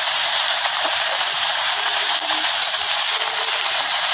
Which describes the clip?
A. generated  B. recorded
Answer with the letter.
A